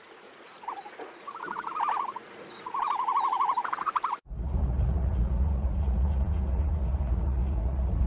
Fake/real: fake